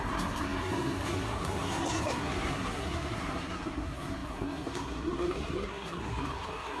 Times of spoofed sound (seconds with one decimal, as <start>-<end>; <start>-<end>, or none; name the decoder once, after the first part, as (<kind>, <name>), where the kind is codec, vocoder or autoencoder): 0.0-6.8 (codec, SNAC)